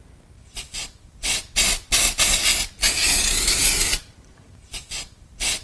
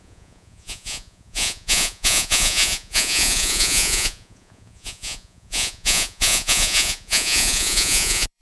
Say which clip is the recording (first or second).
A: first